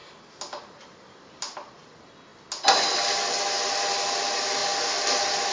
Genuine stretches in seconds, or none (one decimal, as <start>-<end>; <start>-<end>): 0.0-5.5